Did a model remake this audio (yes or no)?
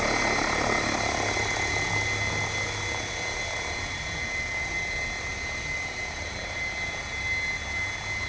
no